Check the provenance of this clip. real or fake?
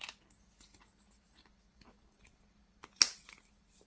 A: real